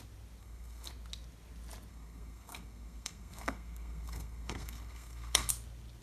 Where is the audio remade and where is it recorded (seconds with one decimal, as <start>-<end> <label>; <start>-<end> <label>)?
0.0-0.4 recorded; 0.4-0.9 remade; 0.9-1.9 recorded; 1.9-5.5 remade; 5.5-6.0 recorded